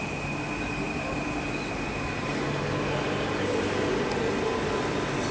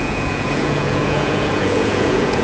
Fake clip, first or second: second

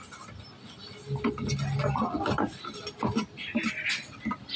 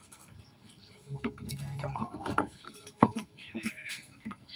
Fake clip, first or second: second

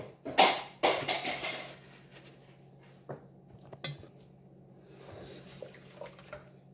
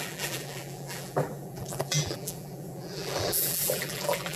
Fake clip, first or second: second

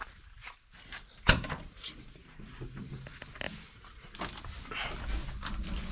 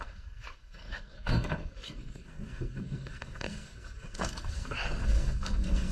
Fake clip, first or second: second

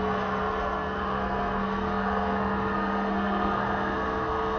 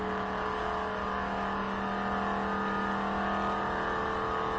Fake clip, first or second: first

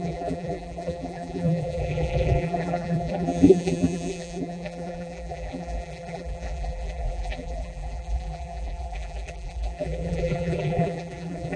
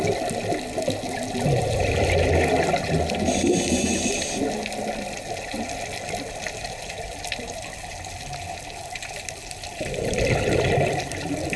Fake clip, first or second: first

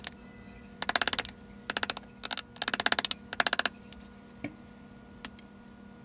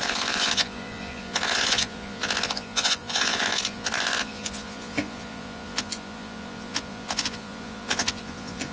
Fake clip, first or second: second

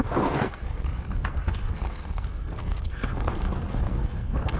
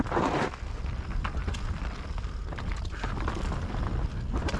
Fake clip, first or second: first